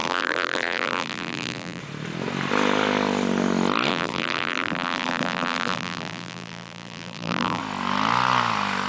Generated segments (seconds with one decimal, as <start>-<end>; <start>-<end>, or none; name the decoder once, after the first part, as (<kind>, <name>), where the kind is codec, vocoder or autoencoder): 0.0-1.8 (vocoder, BigVGAN v2); 3.9-7.6